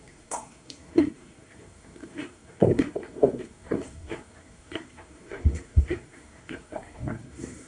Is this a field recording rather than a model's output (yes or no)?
no